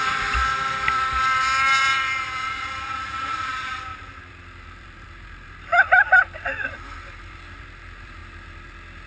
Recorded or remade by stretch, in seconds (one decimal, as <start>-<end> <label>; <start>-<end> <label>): 0.0-8.2 remade; 8.2-9.1 recorded